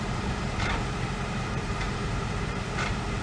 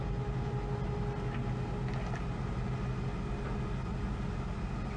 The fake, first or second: first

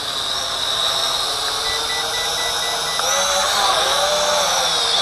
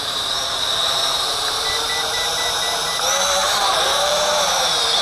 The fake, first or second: second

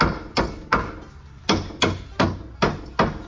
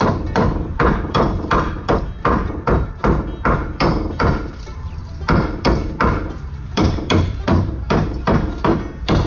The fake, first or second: second